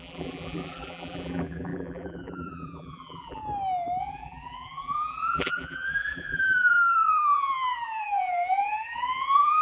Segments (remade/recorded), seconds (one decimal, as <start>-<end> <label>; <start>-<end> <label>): 0.0-3.4 remade; 3.4-4.0 recorded; 4.0-9.6 remade